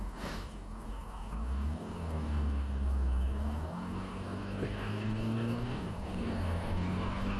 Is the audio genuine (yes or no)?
no